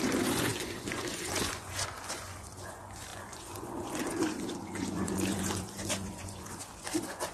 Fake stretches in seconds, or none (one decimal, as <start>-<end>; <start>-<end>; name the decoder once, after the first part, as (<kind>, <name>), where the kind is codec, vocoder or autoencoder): 0.0-7.3 (vocoder, Vocos)